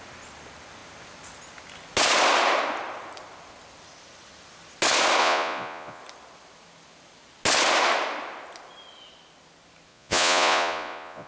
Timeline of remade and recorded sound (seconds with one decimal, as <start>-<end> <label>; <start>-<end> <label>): 0.0-5.2 recorded; 5.2-6.0 remade; 6.0-9.9 recorded; 9.9-11.3 remade